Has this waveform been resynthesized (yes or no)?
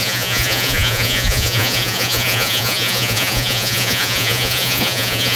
yes